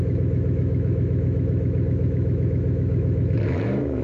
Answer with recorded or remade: remade